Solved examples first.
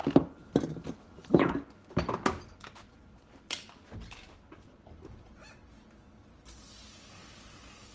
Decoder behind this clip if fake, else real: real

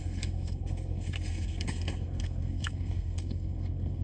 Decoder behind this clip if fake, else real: fake, codec, SNAC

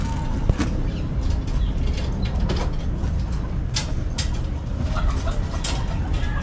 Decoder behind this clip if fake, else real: real